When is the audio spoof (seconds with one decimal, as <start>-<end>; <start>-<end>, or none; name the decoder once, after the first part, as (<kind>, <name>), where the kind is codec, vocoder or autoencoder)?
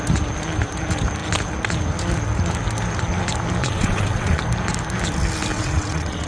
3.6-4.4 (vocoder, WaveNeXt); 5.5-6.3